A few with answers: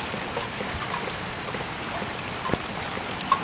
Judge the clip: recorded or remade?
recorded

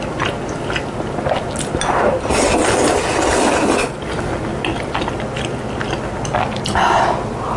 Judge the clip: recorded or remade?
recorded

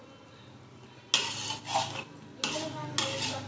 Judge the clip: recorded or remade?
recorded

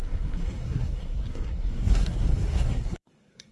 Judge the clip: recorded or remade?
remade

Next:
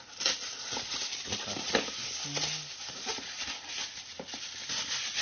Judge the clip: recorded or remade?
recorded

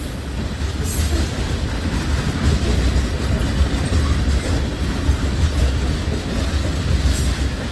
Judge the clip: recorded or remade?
recorded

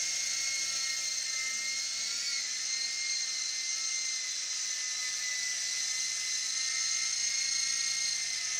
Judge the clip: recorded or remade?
recorded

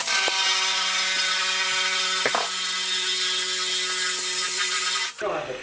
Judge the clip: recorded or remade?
recorded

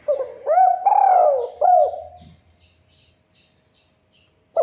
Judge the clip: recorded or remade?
recorded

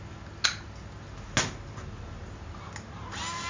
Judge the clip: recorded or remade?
recorded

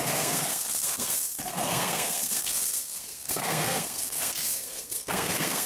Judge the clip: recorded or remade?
remade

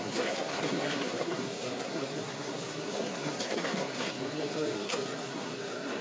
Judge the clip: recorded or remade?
remade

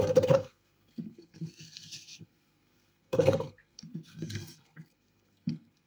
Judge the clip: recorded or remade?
remade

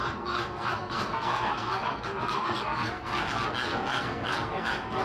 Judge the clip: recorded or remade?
remade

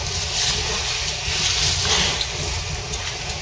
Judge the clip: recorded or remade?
recorded